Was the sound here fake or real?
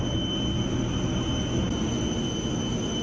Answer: real